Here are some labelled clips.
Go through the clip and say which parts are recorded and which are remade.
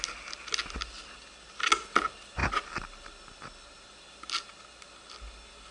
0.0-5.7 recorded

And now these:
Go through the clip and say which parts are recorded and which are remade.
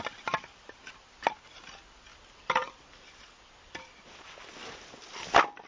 0.0-2.1 recorded; 2.1-3.9 remade; 3.9-5.7 recorded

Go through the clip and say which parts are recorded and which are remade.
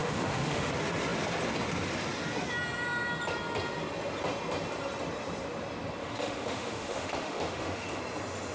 0.0-0.7 remade; 0.7-6.0 recorded; 6.0-8.0 remade; 8.0-8.5 recorded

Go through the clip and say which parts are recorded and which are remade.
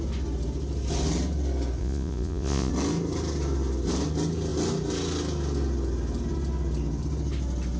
0.0-1.8 recorded; 1.8-2.7 remade; 2.7-7.8 recorded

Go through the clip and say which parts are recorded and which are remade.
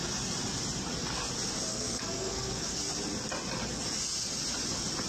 0.0-1.7 recorded; 1.7-2.8 remade; 2.8-5.1 recorded